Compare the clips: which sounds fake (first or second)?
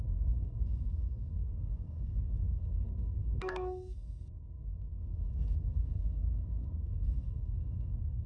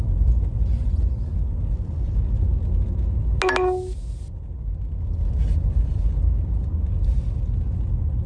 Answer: first